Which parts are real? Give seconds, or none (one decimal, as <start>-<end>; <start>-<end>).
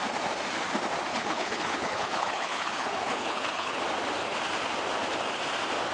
0.0-1.1; 3.8-5.9